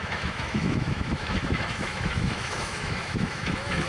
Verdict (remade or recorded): remade